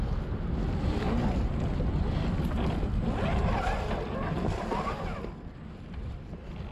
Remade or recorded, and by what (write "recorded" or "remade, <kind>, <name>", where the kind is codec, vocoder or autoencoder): recorded